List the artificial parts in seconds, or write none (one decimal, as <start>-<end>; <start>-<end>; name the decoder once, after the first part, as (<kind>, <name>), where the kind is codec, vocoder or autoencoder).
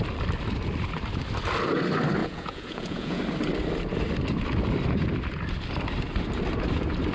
2.2-3.2 (vocoder, Vocos)